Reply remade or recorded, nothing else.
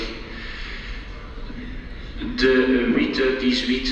recorded